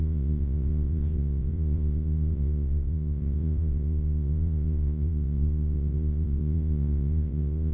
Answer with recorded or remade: remade